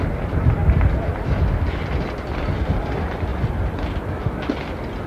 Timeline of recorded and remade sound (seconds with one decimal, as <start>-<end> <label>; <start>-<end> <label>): 0.0-5.1 recorded